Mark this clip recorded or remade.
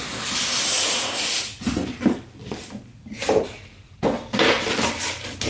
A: recorded